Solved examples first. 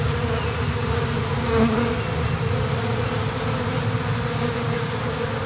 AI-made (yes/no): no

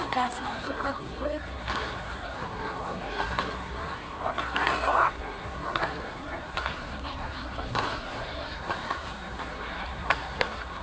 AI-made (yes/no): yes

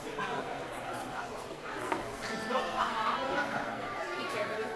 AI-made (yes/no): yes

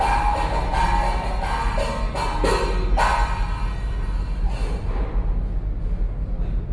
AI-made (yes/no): no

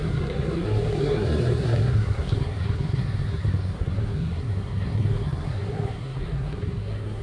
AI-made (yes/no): yes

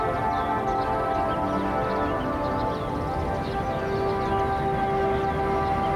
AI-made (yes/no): no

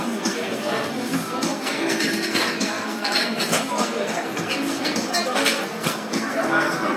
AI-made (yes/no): yes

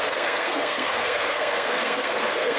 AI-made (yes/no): yes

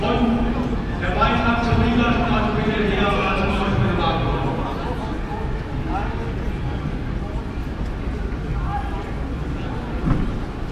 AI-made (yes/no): no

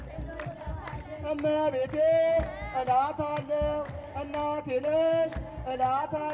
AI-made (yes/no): no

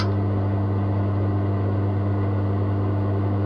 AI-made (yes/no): no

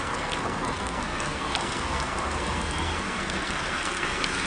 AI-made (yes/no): yes